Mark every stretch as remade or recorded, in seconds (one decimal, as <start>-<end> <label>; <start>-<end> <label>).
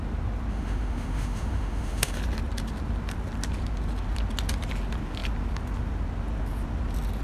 0.0-0.5 recorded; 0.5-2.2 remade; 2.2-7.2 recorded